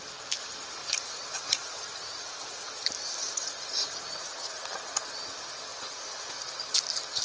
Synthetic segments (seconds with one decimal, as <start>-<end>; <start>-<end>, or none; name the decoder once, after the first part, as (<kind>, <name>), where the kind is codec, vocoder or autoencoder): 0.8-2.7 (vocoder, Vocos); 3.2-4.7; 5.7-6.3